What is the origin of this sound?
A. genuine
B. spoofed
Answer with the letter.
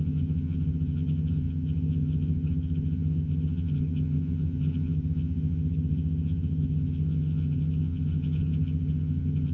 B